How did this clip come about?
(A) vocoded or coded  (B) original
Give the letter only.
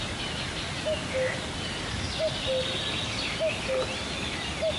B